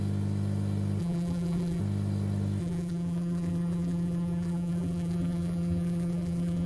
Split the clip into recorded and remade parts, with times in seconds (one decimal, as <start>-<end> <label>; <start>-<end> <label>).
0.0-1.0 recorded; 1.0-1.8 remade; 1.8-2.6 recorded; 2.6-6.7 remade